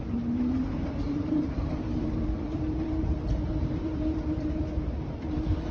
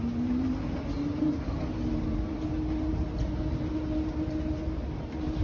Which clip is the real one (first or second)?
second